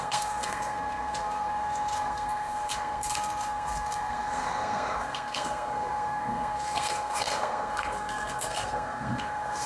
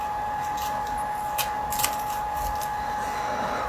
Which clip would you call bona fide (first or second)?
second